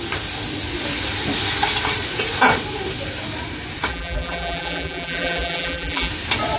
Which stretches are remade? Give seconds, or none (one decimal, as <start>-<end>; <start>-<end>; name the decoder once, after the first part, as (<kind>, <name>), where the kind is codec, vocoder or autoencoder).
3.9-6.1 (vocoder, BigVGAN v2)